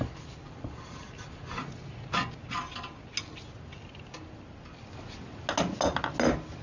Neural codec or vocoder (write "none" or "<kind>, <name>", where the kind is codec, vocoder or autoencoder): none